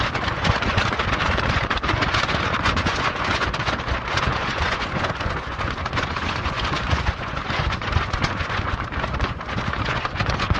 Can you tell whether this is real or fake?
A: fake